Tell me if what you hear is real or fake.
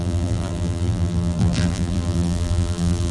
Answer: fake